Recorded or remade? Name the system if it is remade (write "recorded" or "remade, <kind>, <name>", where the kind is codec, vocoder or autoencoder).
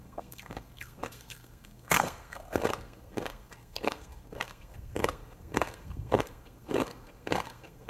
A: remade, codec, SNAC